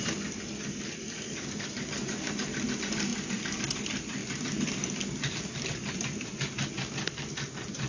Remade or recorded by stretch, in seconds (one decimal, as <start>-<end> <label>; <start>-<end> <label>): 0.0-7.9 recorded